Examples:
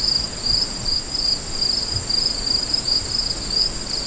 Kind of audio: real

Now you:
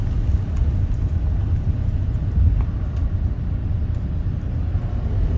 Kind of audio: real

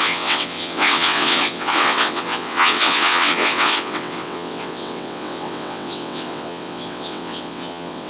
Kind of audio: fake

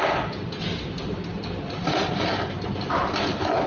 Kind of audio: real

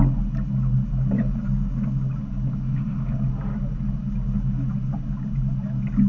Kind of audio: real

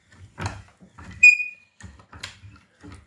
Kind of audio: real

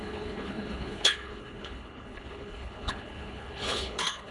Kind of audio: fake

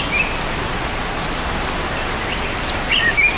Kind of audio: real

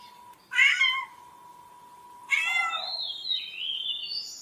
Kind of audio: real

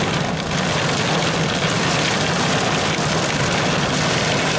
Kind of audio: real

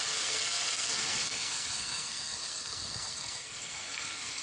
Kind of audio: fake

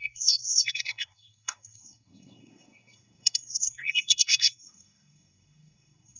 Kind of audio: fake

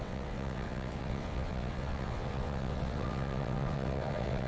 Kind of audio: fake